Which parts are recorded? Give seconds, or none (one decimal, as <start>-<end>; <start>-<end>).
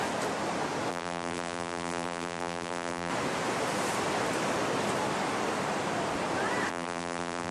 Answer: 0.0-0.9; 3.1-6.7